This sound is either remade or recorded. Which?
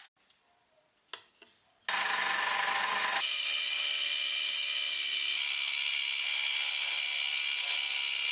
recorded